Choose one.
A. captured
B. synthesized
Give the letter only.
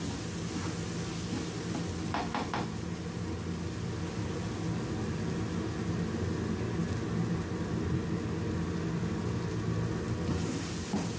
A